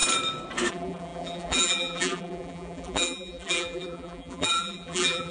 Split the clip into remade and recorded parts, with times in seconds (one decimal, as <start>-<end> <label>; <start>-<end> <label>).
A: 0.0-0.7 recorded; 0.7-5.3 remade